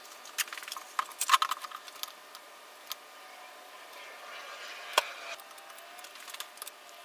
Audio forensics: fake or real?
real